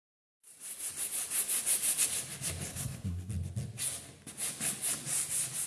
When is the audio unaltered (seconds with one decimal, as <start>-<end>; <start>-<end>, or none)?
0.0-2.7; 3.3-5.7